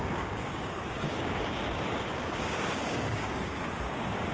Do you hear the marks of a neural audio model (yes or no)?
yes